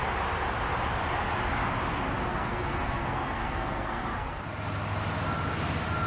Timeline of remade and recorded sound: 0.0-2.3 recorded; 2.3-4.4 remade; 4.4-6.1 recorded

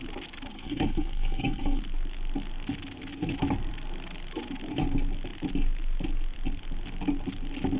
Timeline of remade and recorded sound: 0.0-0.5 recorded; 0.5-1.8 remade; 1.8-7.8 recorded

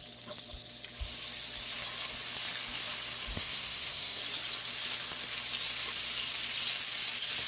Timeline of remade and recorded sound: 0.0-3.3 recorded; 3.3-4.2 remade; 4.2-7.5 recorded

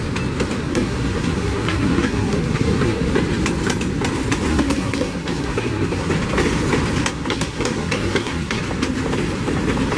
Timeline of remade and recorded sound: 0.0-0.6 recorded; 0.6-3.1 remade; 3.1-4.5 recorded; 4.5-6.1 remade; 6.1-7.0 recorded; 7.0-8.6 remade; 8.6-10.0 recorded

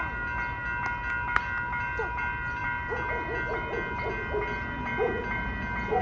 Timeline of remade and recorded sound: 0.0-6.0 recorded